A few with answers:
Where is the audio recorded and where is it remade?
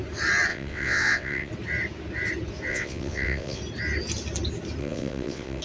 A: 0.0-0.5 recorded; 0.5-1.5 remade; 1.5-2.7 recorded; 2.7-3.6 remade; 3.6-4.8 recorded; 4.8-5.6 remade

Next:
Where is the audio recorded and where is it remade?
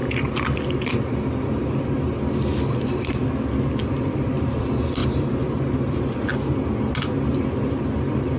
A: 0.0-5.0 recorded; 5.0-6.0 remade; 6.0-8.4 recorded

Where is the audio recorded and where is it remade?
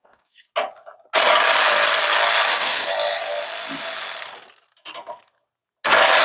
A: 0.0-0.5 remade; 0.5-2.5 recorded; 2.5-2.9 remade; 2.9-6.2 recorded